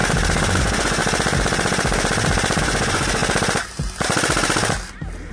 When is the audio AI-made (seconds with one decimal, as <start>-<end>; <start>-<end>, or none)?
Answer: 0.6-1.0; 2.6-3.2